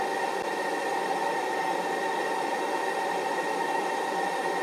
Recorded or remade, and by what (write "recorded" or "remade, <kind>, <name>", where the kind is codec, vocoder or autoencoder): remade, vocoder, BigVGAN v2